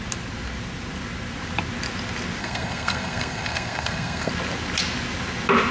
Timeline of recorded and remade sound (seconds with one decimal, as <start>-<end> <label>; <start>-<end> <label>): 0.0-2.4 recorded; 2.4-4.3 remade; 4.3-5.7 recorded